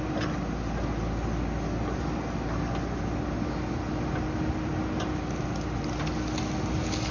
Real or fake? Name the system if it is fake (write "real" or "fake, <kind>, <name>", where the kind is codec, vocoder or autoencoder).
real